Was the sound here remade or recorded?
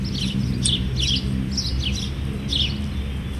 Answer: recorded